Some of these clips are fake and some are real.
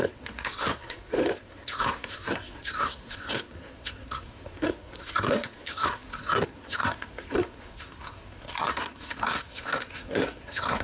fake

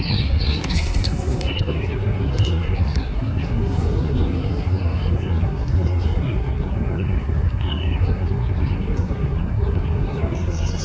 fake